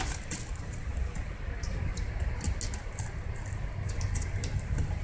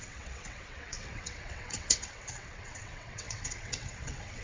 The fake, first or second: second